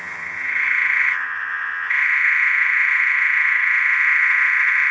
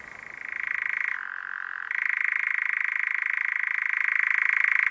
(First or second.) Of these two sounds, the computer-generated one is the first